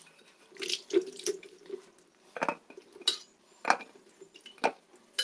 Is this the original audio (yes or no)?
yes